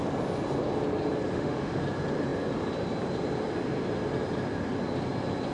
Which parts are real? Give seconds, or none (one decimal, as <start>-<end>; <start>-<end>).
0.0-1.3; 1.8-5.5